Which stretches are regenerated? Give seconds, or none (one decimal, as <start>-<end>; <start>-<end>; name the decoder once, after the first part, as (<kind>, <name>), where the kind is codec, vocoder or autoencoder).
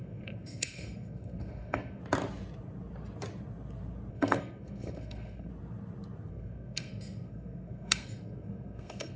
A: 0.0-2.0 (codec, SNAC); 4.1-5.5; 6.3-9.2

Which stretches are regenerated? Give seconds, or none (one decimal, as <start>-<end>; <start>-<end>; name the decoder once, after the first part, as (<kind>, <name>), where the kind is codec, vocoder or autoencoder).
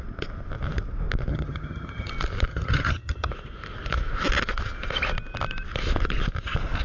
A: 1.3-2.1 (vocoder, HiFi-GAN); 2.5-3.3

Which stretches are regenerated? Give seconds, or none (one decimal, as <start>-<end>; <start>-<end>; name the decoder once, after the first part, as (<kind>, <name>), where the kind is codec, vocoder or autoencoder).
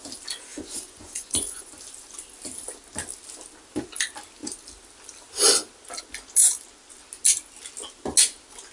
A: 0.5-1.7 (vocoder, Vocos)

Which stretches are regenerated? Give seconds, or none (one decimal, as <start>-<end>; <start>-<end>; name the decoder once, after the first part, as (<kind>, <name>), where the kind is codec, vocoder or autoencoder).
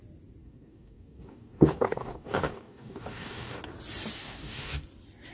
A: 0.4-3.6 (codec, DAC); 4.2-4.8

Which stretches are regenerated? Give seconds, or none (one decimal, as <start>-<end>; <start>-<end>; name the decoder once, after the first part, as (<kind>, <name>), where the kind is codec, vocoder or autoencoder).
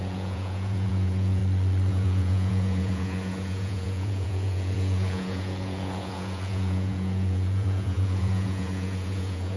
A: 0.0-1.4 (vocoder, Vocos); 1.9-9.6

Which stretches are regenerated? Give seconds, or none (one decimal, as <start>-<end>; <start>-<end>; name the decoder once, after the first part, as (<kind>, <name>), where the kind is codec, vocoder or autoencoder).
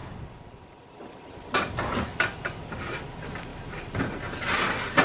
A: 0.0-2.1 (vocoder, BigVGAN v2)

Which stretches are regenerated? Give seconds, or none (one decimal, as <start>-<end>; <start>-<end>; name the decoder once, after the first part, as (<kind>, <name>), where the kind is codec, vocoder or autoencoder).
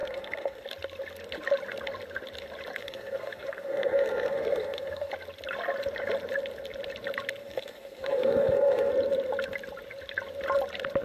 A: 0.0-0.6 (codec, SNAC); 2.8-5.1; 7.4-8.9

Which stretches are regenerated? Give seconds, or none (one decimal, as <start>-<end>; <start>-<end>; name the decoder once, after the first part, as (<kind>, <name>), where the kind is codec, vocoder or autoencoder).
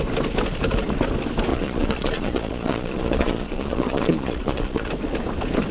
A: 1.5-4.9 (vocoder, Vocos)